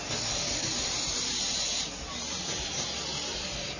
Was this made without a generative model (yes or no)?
yes